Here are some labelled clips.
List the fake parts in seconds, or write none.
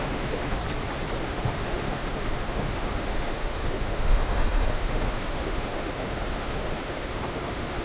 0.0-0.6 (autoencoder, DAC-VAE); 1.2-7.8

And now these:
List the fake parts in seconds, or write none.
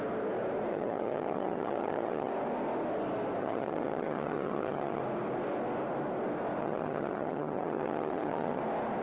0.7-2.3 (vocoder, HiFi-GAN); 3.4-5.0; 6.6-8.6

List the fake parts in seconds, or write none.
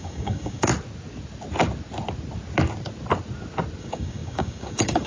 0.0-0.7 (codec, DAC); 3.8-5.1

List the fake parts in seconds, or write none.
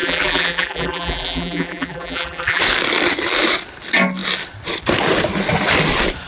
0.0-2.6 (vocoder, BigVGAN v2)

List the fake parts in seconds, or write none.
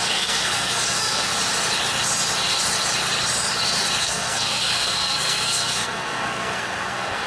0.0-1.3 (codec, SNAC); 4.0-7.3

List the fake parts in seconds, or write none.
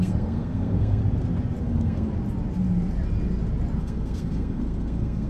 0.0-1.0 (codec, SNAC); 1.6-2.1; 3.8-5.3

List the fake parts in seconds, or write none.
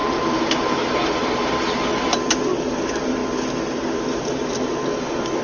0.0-1.2 (vocoder, BigVGAN v2); 2.7-3.2; 4.8-5.4